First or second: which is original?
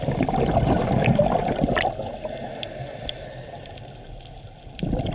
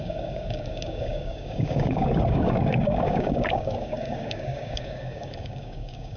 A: first